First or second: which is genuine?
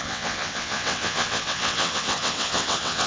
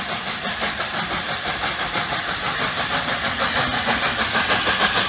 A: second